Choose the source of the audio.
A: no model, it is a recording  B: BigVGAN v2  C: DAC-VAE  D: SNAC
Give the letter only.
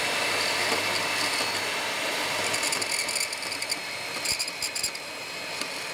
A